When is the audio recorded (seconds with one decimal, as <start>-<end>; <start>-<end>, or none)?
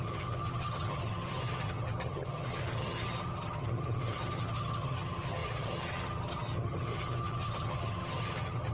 none